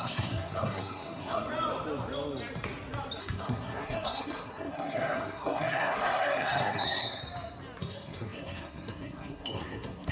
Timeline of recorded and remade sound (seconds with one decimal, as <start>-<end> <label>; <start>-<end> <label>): 0.0-1.5 remade; 1.5-3.2 recorded; 3.2-7.2 remade; 7.2-7.8 recorded; 7.8-10.1 remade